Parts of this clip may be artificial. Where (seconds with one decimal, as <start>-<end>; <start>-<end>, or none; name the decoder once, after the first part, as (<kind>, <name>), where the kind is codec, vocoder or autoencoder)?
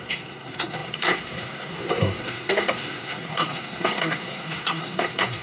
0.0-5.4 (codec, SNAC)